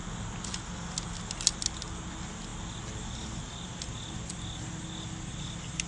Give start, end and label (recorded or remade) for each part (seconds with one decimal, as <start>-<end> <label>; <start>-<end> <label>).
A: 0.0-5.9 recorded